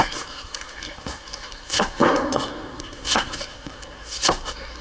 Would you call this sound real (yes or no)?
no